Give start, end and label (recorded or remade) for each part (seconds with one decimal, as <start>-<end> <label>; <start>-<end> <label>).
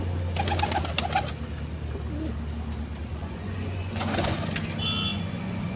0.0-3.1 recorded; 3.1-4.5 remade; 4.5-5.1 recorded; 5.1-5.8 remade